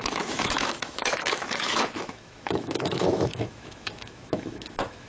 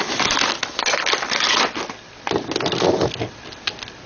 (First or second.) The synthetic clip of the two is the first